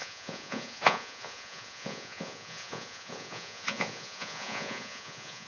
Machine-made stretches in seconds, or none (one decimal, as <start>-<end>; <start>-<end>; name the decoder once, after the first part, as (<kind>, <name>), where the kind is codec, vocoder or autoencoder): 0.0-5.5 (vocoder, Vocos)